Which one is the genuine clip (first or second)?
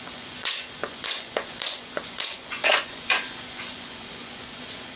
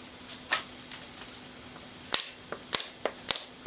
second